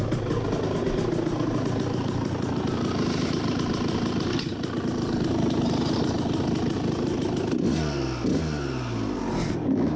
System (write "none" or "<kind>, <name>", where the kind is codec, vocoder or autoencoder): none